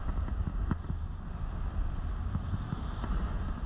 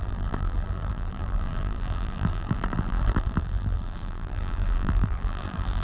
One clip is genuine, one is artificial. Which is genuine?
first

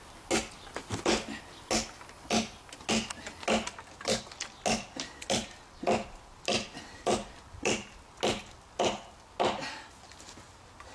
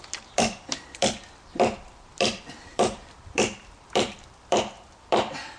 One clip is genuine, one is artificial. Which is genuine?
first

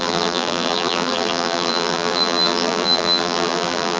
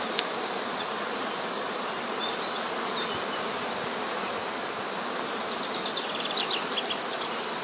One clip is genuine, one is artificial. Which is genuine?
second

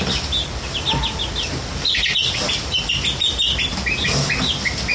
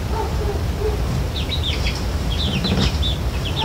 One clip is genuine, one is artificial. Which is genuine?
first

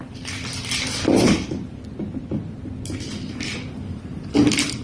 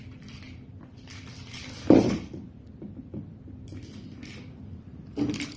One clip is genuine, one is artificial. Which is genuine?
first